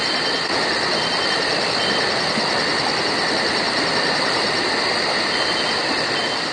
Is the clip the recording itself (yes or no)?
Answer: yes